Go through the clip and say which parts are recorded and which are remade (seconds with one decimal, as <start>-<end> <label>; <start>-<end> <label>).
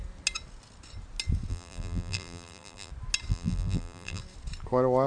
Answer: 0.0-1.5 recorded; 1.5-2.9 remade; 2.9-3.3 recorded; 3.3-4.2 remade; 4.2-5.1 recorded